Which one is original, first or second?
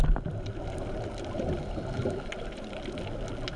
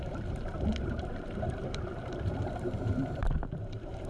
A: first